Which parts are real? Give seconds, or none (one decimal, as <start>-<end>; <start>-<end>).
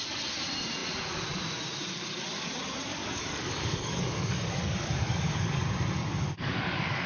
0.0-2.9; 5.6-6.0